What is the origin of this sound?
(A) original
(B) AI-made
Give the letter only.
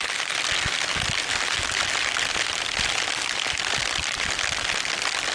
A